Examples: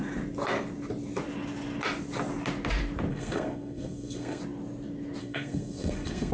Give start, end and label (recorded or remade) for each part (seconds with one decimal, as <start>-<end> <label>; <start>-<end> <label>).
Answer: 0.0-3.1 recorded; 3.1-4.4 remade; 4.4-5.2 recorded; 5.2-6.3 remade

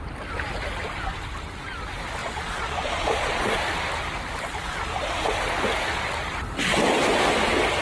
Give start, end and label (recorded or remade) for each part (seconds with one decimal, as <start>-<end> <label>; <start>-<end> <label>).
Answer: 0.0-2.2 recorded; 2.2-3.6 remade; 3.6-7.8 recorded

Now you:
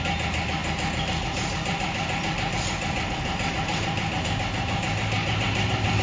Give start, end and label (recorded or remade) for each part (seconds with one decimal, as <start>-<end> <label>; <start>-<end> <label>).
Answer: 0.0-6.0 recorded